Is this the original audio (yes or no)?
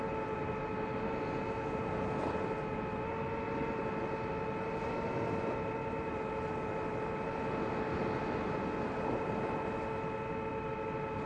yes